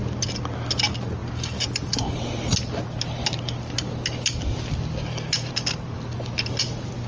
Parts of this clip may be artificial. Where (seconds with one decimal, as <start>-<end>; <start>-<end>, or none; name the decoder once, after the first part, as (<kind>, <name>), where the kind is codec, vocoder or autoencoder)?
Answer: none